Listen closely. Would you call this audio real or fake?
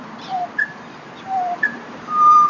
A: fake